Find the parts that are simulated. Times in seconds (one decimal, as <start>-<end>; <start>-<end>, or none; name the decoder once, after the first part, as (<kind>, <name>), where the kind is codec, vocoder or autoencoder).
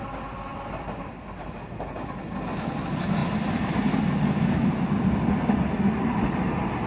0.5-1.2 (vocoder, BigVGAN v2); 3.2-3.7